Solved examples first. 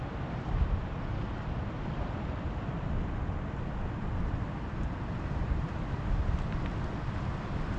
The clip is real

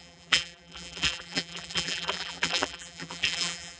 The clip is fake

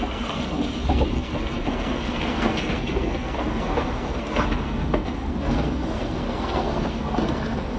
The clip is fake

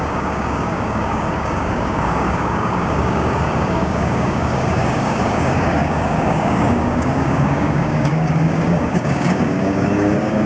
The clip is fake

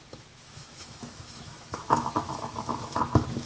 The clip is fake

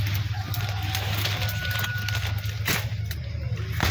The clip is real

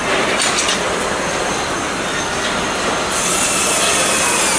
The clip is real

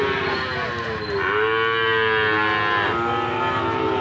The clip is real